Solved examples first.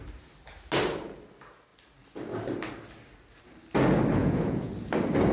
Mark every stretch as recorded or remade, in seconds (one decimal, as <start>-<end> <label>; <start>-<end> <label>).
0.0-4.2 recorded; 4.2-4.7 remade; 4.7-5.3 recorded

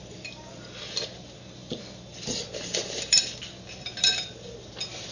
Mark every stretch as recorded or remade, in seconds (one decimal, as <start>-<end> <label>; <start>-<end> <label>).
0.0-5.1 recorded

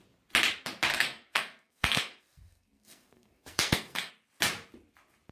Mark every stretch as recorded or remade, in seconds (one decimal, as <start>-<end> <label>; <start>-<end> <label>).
0.0-0.9 recorded; 0.9-4.1 remade; 4.1-5.3 recorded

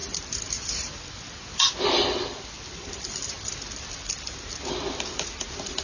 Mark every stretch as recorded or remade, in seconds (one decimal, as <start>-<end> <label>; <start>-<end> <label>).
0.0-5.8 recorded

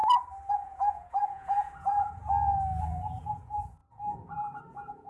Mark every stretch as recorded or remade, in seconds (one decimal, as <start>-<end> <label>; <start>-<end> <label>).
0.0-0.5 recorded; 0.5-2.2 remade; 2.2-2.8 recorded; 2.8-5.1 remade

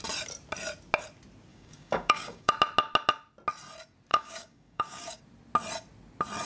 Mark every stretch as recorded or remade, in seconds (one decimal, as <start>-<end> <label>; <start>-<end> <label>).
0.0-1.5 recorded; 1.5-2.5 remade; 2.5-4.1 recorded; 4.1-5.2 remade; 5.2-6.4 recorded

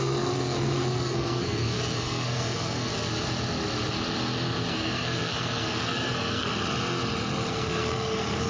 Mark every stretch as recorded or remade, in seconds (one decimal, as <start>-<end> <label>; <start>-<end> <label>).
0.0-2.9 remade; 2.9-4.7 recorded; 4.7-6.5 remade; 6.5-7.5 recorded; 7.5-8.5 remade

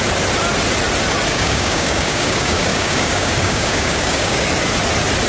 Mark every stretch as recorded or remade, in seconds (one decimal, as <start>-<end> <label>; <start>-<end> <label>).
0.0-1.3 recorded; 1.3-4.5 remade; 4.5-5.3 recorded